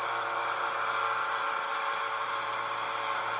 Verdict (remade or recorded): recorded